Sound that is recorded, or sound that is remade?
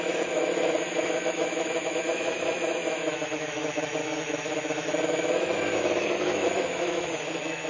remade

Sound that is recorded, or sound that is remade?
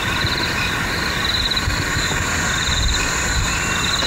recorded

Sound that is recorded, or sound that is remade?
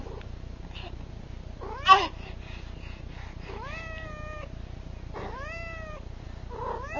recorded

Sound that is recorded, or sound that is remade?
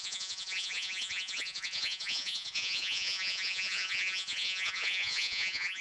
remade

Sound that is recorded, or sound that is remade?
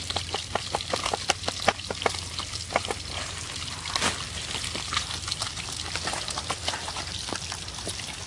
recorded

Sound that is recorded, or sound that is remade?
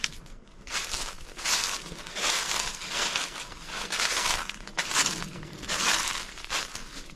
remade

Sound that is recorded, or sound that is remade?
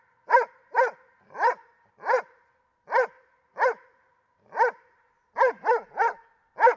recorded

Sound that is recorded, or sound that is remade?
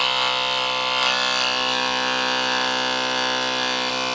recorded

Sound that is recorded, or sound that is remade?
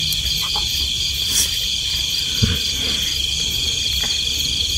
recorded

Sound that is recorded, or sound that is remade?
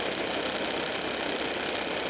recorded